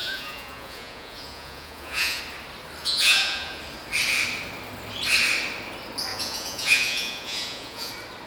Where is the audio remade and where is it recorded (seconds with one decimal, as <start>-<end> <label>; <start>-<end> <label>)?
0.0-2.2 remade; 2.2-2.8 recorded; 2.8-3.6 remade; 3.6-6.1 recorded; 6.1-7.9 remade; 7.9-8.3 recorded